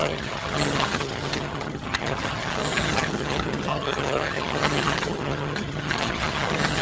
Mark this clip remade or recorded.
remade